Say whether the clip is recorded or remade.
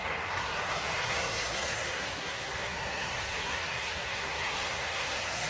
remade